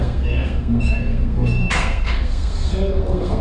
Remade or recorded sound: remade